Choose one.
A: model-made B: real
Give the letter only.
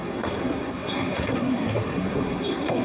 A